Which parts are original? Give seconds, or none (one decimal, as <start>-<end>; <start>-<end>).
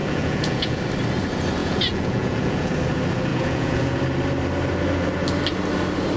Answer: 0.8-1.6; 2.7-3.3; 4.0-6.2